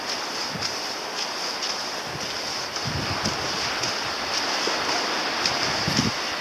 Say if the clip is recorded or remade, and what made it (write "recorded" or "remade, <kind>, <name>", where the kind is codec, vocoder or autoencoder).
recorded